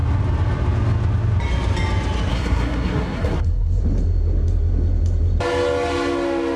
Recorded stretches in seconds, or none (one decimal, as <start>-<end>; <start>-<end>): 0.0-2.3; 3.8-6.6

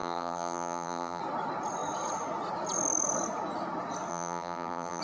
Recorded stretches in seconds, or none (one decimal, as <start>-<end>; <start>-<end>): 1.2-4.1

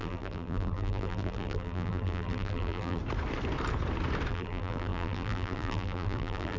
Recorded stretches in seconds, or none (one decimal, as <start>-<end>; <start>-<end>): 3.0-4.3

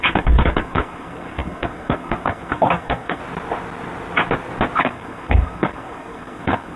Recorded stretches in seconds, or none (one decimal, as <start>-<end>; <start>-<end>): 3.2-4.8

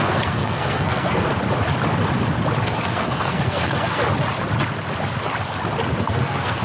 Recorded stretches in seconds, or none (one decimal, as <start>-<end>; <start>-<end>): 1.3-2.6; 4.0-6.0

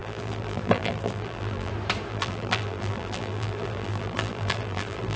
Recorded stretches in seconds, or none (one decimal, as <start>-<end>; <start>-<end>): 1.7-2.1